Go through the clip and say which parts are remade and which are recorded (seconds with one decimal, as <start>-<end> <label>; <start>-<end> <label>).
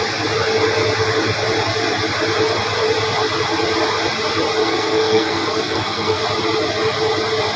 0.0-4.6 recorded; 4.6-6.2 remade; 6.2-7.6 recorded